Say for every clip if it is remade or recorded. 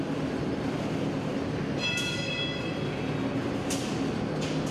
recorded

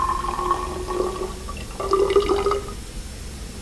recorded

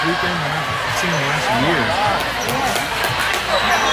recorded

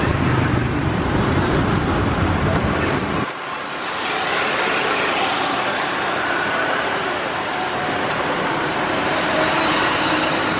remade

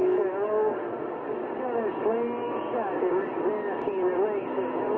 recorded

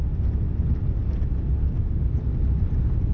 recorded